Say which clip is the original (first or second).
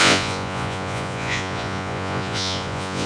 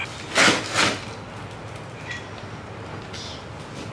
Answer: second